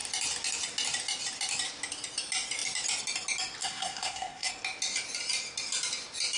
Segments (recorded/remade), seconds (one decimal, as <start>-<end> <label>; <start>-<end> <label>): 0.0-3.6 recorded; 3.6-4.5 remade; 4.5-6.4 recorded